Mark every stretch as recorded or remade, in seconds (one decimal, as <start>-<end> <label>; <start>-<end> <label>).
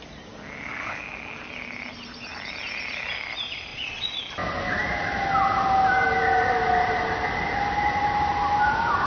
0.0-3.7 recorded; 3.7-4.2 remade; 4.2-9.1 recorded